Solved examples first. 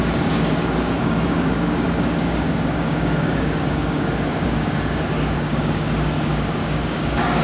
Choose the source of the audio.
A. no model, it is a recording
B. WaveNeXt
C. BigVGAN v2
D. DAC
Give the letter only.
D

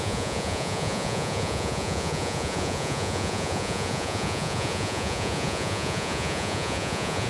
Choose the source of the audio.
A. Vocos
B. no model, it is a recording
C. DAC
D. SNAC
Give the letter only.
A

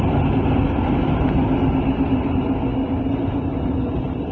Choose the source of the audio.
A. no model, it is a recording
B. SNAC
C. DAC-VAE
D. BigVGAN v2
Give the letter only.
A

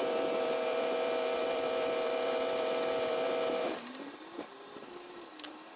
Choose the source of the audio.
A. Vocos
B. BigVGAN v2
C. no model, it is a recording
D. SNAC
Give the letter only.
B